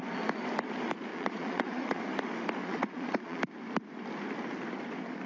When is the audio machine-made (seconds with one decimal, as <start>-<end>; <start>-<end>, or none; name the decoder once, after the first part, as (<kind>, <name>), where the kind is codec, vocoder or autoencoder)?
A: 1.1-2.0 (vocoder, Vocos); 2.6-3.4